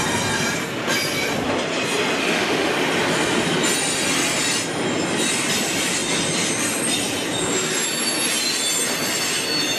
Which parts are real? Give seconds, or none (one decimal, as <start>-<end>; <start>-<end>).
0.0-2.2; 2.7-9.8